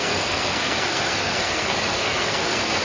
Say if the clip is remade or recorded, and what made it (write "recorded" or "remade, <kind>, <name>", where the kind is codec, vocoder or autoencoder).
remade, codec, SNAC